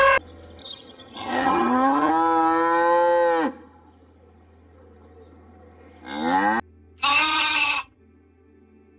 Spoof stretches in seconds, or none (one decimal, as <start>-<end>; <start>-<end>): 0.6-2.1; 7.1-8.0